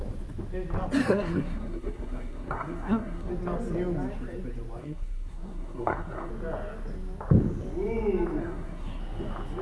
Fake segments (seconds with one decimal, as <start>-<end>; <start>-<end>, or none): 1.0-3.3; 4.8-6.3; 8.4-9.0